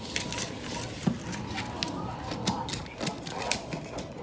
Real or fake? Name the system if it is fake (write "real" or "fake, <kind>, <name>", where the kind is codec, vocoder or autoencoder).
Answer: real